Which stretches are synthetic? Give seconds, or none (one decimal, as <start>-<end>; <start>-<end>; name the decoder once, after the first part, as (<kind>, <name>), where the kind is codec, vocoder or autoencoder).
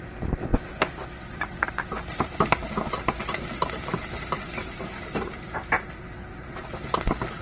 4.0-6.6 (vocoder, BigVGAN v2)